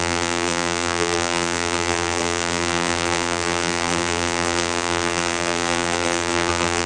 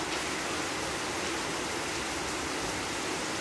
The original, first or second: second